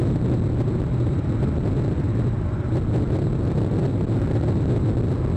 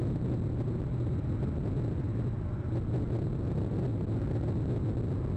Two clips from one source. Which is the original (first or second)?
second